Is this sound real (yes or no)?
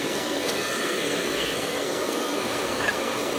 no